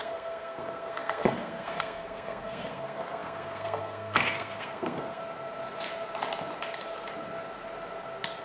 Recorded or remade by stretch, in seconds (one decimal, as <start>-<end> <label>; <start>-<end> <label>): 0.0-5.2 remade; 5.2-8.4 recorded